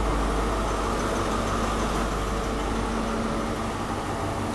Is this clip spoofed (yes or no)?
no